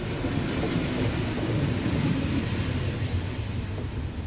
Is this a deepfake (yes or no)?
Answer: no